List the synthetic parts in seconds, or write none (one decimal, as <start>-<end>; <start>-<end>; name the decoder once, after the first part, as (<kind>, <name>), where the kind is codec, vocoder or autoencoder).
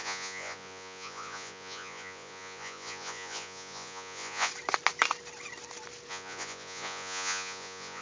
0.0-4.5 (vocoder, Vocos); 6.1-8.0